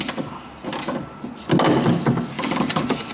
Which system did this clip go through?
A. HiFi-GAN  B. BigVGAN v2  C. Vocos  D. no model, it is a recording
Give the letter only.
D